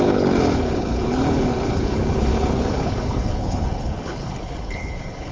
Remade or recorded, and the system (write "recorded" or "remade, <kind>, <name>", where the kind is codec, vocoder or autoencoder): remade, codec, HILCodec